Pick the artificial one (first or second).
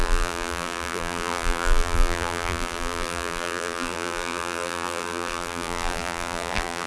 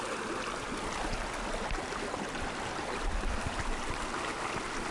first